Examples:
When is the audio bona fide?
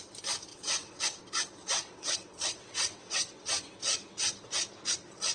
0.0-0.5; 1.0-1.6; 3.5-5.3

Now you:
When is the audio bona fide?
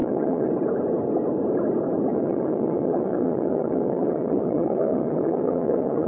0.5-2.1